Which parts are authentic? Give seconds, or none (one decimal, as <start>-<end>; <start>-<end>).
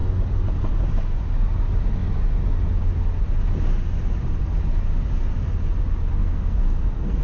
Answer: 0.0-6.2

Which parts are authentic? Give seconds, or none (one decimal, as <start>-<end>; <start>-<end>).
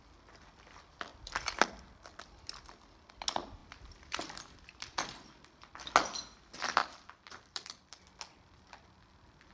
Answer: 0.0-3.6; 5.9-6.8; 8.0-9.5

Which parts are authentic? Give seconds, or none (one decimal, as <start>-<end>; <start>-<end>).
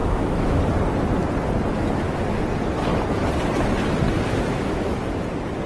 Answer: 0.6-4.5; 5.0-5.7